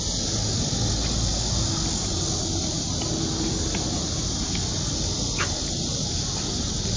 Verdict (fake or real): real